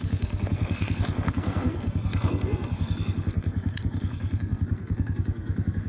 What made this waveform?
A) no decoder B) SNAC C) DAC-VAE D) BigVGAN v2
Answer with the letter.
B